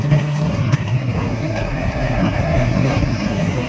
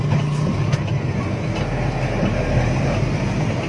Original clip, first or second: second